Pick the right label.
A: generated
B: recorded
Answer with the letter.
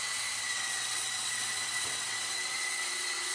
A